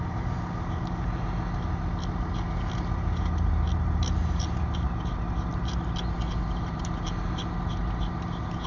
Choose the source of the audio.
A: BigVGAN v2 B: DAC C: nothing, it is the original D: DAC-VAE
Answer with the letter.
C